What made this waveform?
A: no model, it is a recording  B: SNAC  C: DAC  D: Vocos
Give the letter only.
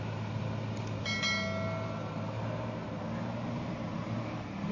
A